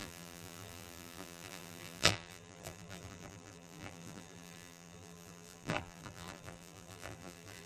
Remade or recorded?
remade